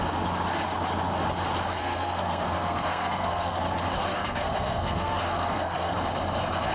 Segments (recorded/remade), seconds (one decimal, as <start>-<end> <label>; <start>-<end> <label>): 0.0-1.8 recorded; 1.8-3.5 remade; 3.5-4.1 recorded; 4.1-5.9 remade; 5.9-6.7 recorded